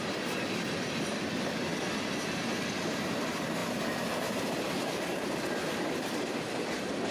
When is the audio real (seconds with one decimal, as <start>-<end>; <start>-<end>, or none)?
0.0-7.1